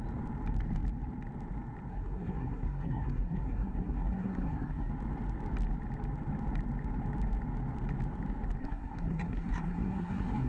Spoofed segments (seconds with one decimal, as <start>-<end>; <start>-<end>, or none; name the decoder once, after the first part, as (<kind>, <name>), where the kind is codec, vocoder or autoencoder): 1.9-4.9 (codec, SNAC); 8.6-10.5